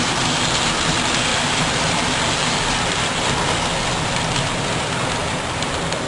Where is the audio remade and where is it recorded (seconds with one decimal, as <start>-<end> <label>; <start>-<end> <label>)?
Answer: 0.0-1.3 recorded; 1.3-3.0 remade; 3.0-5.2 recorded; 5.2-6.1 remade